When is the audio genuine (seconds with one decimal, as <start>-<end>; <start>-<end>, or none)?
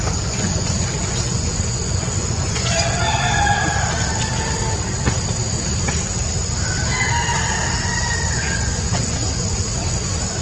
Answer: 3.0-7.8; 9.2-9.7